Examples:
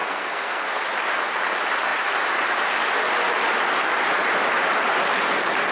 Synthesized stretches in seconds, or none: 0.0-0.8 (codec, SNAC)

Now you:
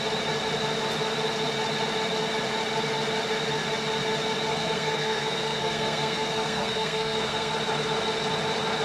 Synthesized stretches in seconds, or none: 4.5-7.5 (codec, SNAC)

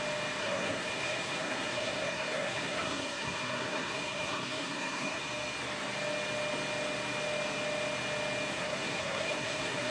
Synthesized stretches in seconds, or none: 0.4-5.2 (codec, SNAC); 8.5-9.9

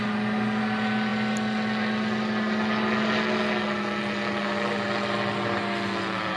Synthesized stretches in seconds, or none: none

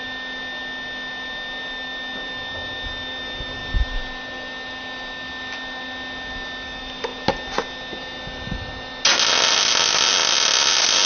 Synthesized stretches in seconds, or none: none

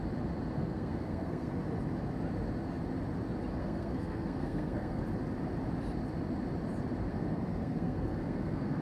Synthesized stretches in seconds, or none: 0.6-1.5 (codec, SNAC); 3.6-5.0; 7.1-8.8

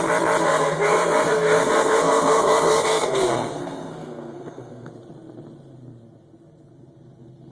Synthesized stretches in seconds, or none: 0.4-4.9 (codec, SNAC)